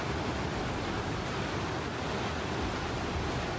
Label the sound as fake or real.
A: real